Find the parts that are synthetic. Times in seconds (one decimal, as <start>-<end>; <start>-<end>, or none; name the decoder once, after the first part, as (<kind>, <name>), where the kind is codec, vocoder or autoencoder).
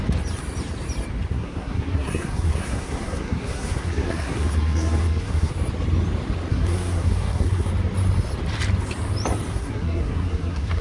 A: 1.3-5.5 (codec, SNAC); 6.5-7.7; 9.5-10.8